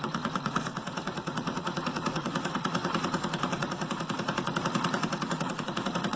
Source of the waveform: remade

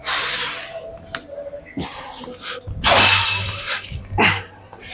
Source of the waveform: recorded